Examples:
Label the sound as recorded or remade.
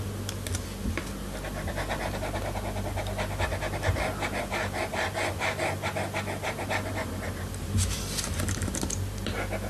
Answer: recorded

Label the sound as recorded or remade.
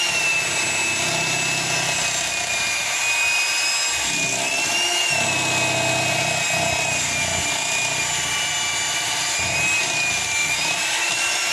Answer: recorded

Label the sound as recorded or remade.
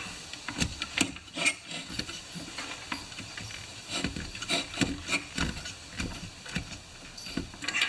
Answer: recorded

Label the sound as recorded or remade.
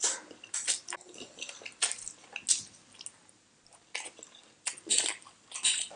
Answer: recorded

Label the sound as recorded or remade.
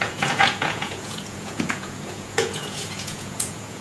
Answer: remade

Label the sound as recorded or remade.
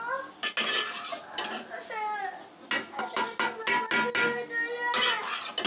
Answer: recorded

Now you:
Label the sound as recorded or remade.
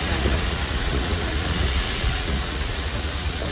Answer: remade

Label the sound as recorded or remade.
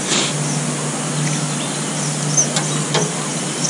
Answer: recorded